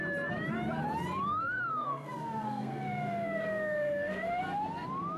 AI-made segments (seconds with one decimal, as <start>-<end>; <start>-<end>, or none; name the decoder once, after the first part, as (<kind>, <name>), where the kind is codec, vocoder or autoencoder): 1.3-4.4 (codec, SNAC)